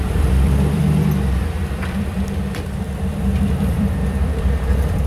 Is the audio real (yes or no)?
no